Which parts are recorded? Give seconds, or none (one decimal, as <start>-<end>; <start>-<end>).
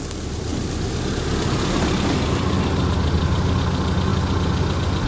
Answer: 0.0-5.1